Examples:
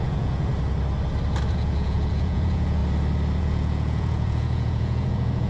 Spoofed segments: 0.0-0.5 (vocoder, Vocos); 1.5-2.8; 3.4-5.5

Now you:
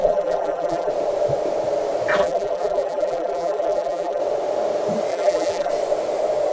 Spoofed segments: 0.0-0.9 (vocoder, BigVGAN v2); 2.2-4.2; 5.1-5.7

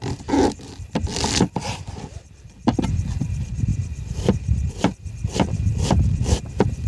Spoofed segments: 1.1-3.3 (vocoder, BigVGAN v2); 3.7-6.2